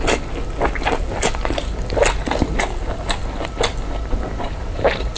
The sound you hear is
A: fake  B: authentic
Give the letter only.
B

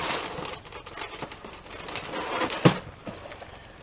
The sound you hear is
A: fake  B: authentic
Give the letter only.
B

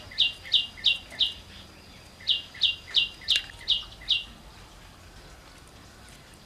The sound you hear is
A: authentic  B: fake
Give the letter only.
A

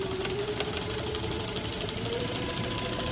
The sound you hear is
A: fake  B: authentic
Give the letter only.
A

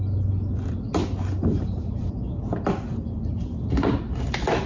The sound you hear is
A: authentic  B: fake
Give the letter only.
A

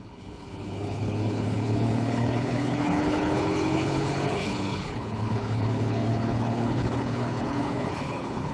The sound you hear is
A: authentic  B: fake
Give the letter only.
B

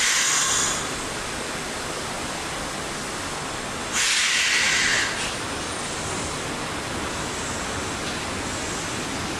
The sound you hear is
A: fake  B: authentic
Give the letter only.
B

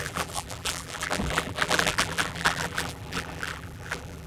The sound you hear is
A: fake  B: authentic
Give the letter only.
A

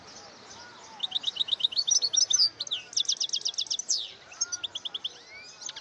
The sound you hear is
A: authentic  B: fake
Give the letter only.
A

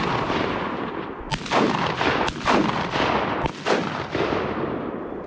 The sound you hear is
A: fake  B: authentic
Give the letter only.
B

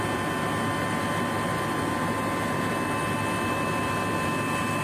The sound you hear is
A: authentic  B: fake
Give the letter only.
A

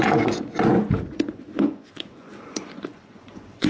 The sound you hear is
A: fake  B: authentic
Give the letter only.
A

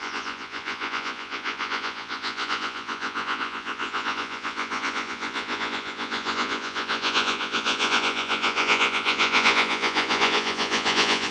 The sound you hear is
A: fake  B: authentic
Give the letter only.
A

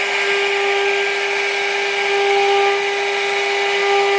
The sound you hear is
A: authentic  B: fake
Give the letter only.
A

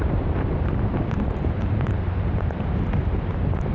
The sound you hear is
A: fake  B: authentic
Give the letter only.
A